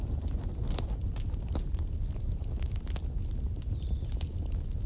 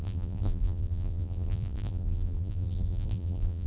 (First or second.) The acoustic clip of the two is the first